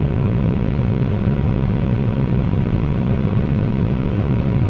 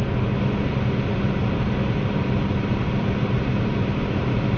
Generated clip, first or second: first